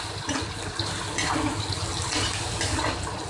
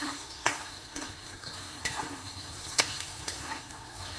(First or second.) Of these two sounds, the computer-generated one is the second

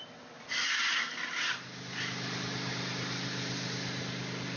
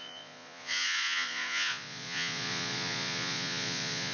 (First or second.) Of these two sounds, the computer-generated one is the second